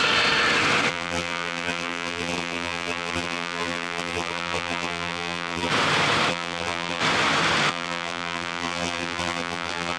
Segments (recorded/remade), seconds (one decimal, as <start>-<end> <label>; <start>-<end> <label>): 0.0-0.9 recorded; 0.9-5.7 remade; 5.7-6.3 recorded; 6.3-7.0 remade; 7.0-7.7 recorded; 7.7-10.0 remade